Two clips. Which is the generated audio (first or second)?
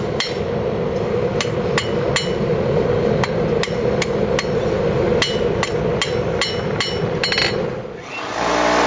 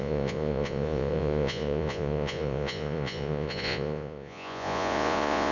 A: second